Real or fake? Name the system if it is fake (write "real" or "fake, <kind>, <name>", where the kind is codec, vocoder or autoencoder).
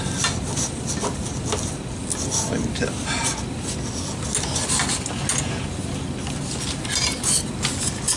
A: real